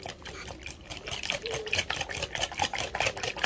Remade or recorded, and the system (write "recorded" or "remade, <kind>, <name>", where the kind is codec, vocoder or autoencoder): recorded